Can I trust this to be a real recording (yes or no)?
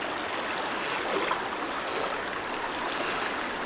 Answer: yes